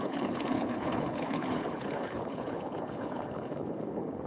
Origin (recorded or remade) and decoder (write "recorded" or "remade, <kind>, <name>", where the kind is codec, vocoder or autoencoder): remade, codec, HILCodec